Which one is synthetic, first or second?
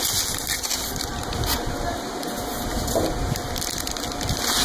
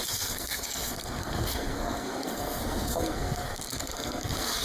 second